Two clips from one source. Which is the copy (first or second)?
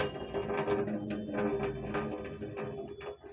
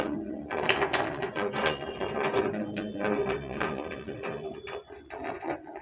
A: second